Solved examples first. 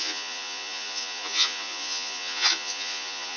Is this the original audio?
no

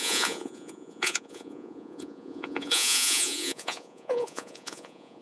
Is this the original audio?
no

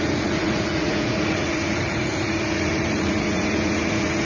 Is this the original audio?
no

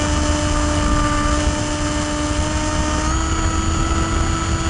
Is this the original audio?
yes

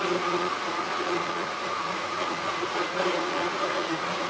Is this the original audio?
no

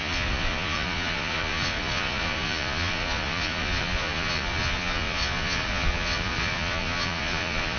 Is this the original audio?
no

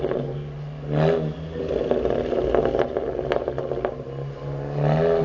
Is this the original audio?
yes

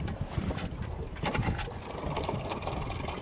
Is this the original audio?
yes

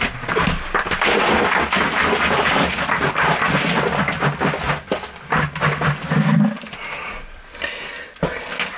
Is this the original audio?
yes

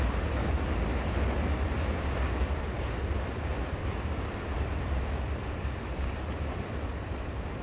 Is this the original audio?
yes